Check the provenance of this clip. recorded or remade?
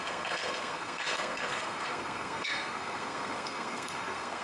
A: remade